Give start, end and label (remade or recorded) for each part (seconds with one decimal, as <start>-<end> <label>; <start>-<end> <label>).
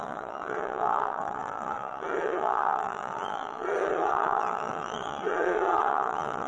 0.0-6.5 remade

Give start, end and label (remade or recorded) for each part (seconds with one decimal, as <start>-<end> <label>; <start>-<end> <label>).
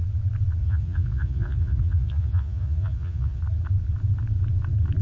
0.0-0.6 recorded; 0.6-3.4 remade; 3.4-5.0 recorded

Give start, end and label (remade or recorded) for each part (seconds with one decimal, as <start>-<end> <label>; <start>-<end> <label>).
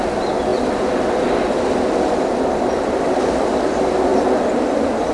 0.0-5.1 recorded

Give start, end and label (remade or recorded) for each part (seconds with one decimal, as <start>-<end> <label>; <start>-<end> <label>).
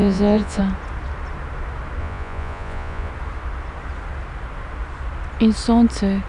0.0-0.6 remade; 0.6-2.0 recorded; 2.0-3.1 remade; 3.1-6.3 recorded